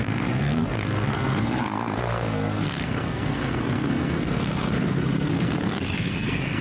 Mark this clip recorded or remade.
remade